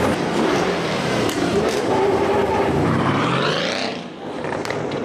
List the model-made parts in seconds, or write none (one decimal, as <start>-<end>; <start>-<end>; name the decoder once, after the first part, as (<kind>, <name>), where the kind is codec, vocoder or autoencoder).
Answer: 0.5-3.5 (vocoder, BigVGAN v2)